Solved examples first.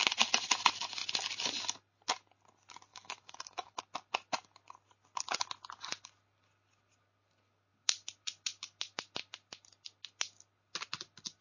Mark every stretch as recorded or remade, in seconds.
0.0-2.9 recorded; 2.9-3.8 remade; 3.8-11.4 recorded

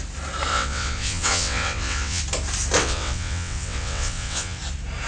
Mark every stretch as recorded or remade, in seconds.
0.0-0.5 recorded; 0.5-2.2 remade; 2.2-2.8 recorded; 2.8-4.6 remade; 4.6-5.1 recorded

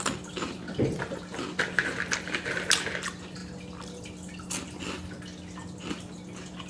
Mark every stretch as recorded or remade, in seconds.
0.0-6.7 recorded

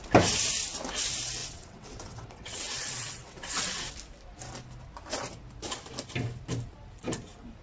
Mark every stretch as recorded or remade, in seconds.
0.0-1.4 recorded; 1.4-3.9 remade; 3.9-7.6 recorded